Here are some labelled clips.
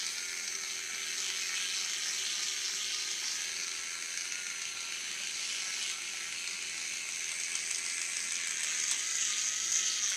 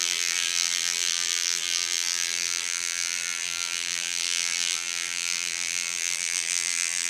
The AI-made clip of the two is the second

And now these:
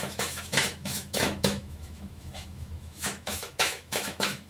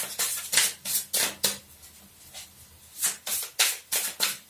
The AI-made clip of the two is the first